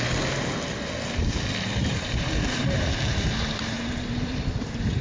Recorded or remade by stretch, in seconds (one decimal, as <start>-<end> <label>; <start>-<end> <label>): 0.0-1.9 recorded; 1.9-5.0 remade